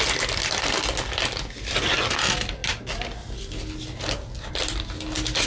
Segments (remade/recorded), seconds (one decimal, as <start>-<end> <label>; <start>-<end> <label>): 0.0-5.5 recorded

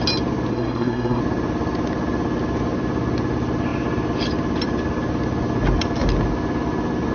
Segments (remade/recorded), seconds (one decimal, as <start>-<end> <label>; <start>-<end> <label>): 0.0-0.5 recorded; 0.5-1.2 remade; 1.2-7.1 recorded

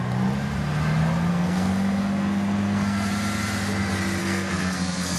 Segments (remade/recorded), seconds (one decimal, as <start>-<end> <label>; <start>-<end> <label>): 0.0-1.3 recorded; 1.3-3.1 remade; 3.1-4.2 recorded; 4.2-5.2 remade

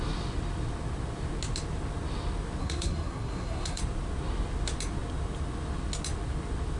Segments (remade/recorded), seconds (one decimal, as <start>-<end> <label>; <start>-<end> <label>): 0.0-2.6 recorded; 2.6-3.8 remade; 3.8-6.8 recorded